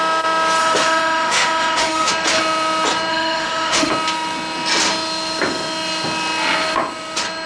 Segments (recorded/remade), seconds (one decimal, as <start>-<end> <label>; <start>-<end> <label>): 0.0-0.6 recorded; 0.6-2.1 remade; 2.1-3.1 recorded; 3.1-3.9 remade; 3.9-7.5 recorded